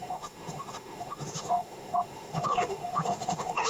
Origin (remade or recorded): remade